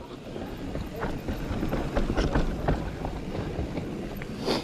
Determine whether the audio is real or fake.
real